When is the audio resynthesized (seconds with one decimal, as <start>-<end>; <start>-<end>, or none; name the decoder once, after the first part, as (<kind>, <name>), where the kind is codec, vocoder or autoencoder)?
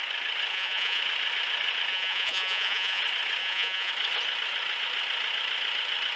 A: 0.5-1.0 (vocoder, Vocos); 1.9-3.0; 3.4-3.9